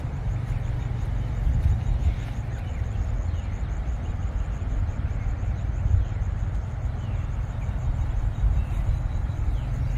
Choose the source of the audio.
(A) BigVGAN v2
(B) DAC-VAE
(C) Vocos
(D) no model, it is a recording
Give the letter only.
D